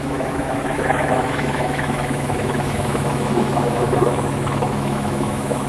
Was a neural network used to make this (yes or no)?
yes